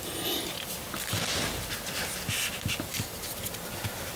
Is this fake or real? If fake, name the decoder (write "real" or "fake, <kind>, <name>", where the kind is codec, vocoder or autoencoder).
real